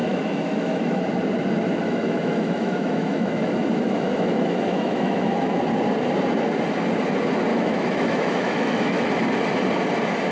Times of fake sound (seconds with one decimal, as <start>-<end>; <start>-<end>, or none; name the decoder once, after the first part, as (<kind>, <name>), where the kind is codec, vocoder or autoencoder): 0.0-1.0 (autoencoder, DAC-VAE); 1.8-5.6; 7.5-9.1